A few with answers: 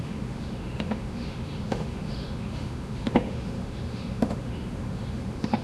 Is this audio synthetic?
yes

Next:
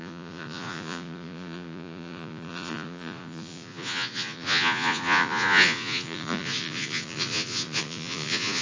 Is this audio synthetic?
yes